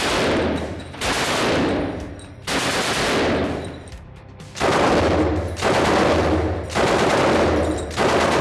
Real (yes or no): no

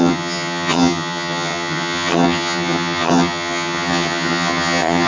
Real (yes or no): no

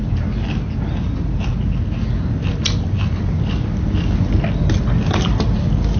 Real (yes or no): yes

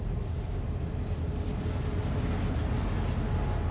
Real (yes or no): yes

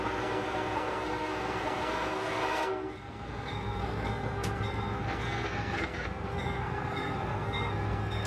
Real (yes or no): no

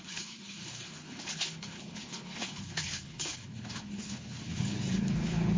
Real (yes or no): no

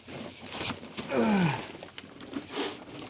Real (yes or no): yes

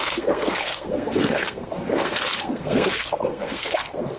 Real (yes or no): no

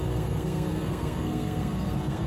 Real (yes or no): no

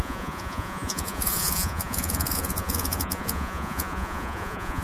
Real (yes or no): no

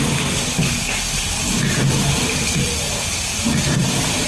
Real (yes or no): yes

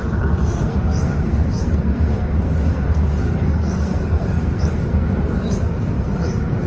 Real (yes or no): no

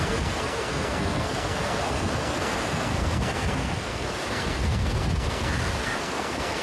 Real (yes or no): no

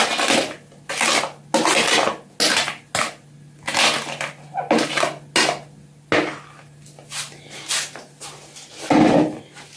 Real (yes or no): yes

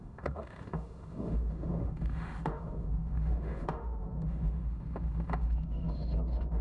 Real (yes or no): no